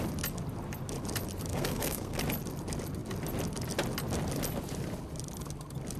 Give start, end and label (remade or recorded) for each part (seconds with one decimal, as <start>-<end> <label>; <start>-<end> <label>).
0.0-1.5 recorded; 1.5-2.2 remade; 2.2-6.0 recorded